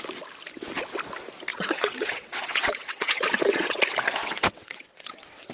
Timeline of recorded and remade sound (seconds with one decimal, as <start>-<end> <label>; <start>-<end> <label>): 0.0-1.5 recorded; 1.5-3.8 remade; 3.8-4.2 recorded; 4.2-5.5 remade